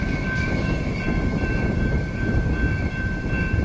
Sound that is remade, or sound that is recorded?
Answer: remade